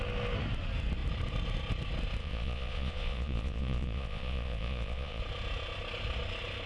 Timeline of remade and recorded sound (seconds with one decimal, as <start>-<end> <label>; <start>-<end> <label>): 0.0-2.2 recorded; 2.2-5.2 remade; 5.2-6.7 recorded